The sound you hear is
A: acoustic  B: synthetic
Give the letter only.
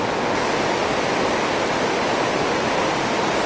A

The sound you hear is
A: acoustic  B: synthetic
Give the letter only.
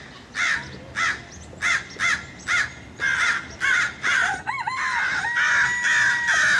A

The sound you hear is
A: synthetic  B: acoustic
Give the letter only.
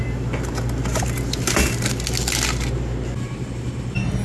B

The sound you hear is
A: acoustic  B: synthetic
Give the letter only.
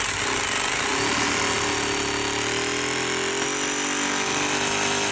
A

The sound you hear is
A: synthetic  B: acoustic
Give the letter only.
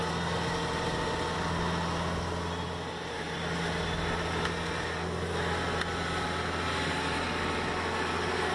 B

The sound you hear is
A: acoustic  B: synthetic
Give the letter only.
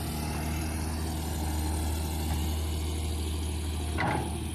A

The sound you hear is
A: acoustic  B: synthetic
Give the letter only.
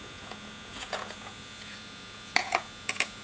B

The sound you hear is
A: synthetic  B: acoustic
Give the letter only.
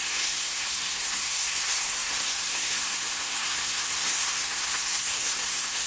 A